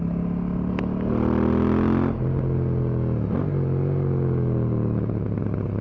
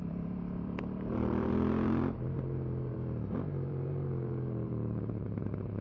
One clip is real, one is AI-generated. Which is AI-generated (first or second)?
second